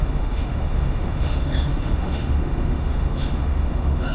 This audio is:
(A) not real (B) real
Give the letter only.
A